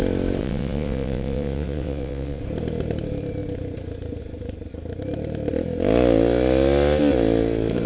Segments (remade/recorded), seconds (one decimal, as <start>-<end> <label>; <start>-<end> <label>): 0.0-0.4 recorded; 0.4-2.4 remade; 2.4-7.9 recorded